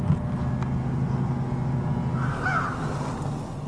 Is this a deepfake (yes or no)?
no